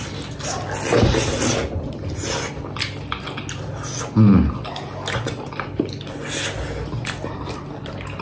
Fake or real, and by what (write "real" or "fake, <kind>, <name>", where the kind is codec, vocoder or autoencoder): real